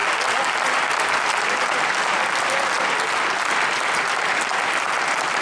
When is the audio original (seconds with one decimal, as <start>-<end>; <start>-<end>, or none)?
0.0-5.4